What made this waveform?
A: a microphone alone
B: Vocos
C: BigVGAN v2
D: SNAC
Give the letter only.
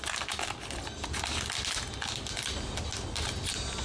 A